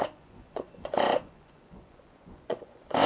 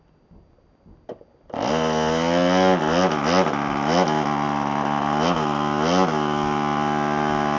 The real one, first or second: second